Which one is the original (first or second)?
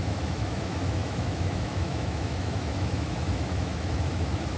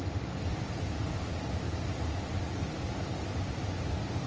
second